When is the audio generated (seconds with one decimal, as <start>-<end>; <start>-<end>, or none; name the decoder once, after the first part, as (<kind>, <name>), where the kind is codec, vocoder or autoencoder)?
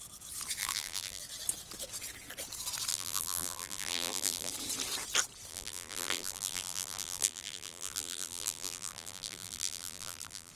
0.6-1.2 (vocoder, BigVGAN v2); 2.9-4.5; 5.5-10.5